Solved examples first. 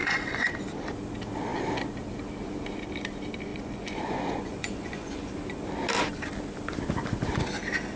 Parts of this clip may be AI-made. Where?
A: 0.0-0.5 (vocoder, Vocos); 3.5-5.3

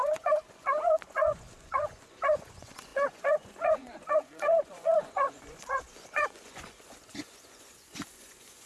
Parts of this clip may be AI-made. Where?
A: 0.0-8.7 (vocoder, Vocos)

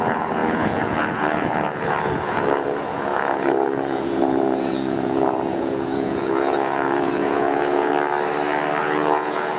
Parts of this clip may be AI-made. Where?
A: 0.0-7.9 (vocoder, Vocos); 8.8-9.6

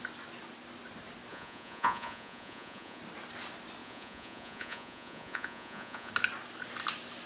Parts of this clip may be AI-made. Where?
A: 1.3-3.0 (vocoder, Vocos); 3.8-6.1